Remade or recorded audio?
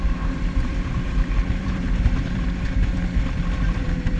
remade